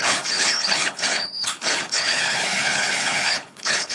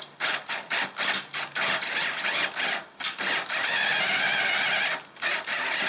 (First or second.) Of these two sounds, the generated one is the first